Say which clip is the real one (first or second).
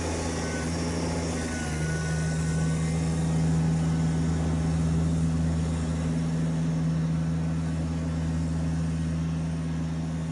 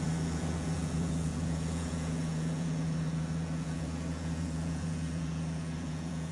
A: first